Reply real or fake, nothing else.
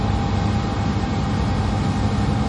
real